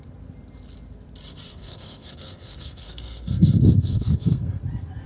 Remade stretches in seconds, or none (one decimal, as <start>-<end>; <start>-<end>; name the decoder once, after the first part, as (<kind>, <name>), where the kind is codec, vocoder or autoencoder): 1.5-4.6 (codec, SNAC)

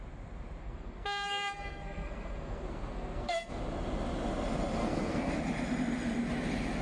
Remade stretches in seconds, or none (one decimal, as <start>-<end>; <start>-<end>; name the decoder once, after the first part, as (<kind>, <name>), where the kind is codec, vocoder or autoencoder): 0.6-3.5 (codec, SNAC); 4.8-5.3

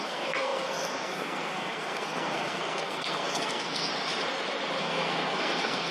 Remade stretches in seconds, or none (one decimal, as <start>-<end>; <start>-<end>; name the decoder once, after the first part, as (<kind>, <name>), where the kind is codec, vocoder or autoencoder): 0.0-3.9 (codec, SNAC); 4.8-5.9

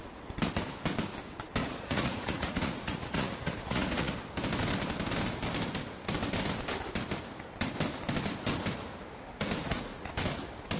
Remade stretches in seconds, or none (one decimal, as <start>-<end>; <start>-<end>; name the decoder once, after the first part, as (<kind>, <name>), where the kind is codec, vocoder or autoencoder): 1.6-4.1 (vocoder, Vocos); 9.6-10.1